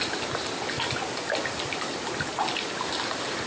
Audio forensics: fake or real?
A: real